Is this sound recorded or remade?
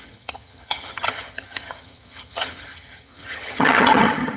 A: remade